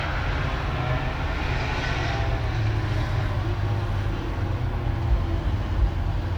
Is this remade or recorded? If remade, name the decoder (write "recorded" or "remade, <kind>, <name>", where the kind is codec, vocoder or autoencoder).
recorded